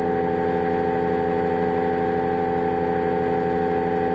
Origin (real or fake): real